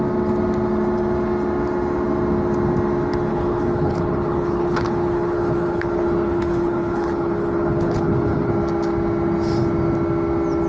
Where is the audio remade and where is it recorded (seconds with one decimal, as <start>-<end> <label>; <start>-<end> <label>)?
0.0-3.3 recorded; 3.3-8.5 remade; 8.5-10.7 recorded